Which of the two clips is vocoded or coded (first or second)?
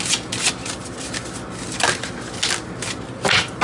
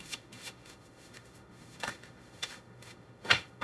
second